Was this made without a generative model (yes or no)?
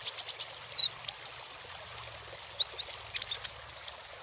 yes